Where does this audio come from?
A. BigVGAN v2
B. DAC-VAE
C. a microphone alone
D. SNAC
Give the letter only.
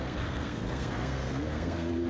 D